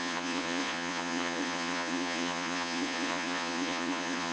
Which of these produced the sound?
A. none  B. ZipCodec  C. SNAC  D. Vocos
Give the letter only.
D